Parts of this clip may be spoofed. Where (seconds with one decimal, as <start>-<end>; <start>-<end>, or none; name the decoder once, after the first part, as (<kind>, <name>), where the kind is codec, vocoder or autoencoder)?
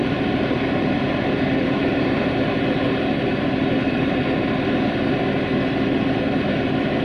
0.0-4.2 (vocoder, BigVGAN v2)